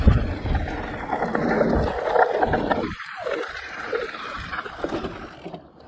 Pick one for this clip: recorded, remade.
recorded